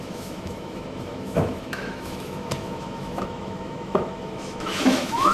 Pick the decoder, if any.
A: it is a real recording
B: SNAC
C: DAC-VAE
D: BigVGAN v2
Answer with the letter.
C